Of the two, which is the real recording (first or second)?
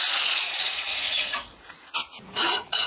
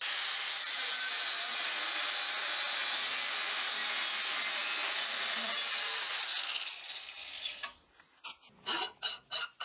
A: second